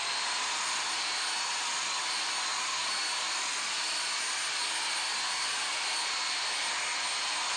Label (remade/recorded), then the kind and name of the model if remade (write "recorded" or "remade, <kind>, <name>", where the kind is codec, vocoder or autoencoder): recorded